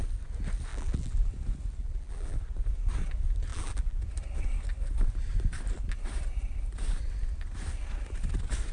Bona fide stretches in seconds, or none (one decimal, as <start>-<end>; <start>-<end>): 0.0-0.7; 1.3-1.8; 2.4-3.5; 4.0-8.7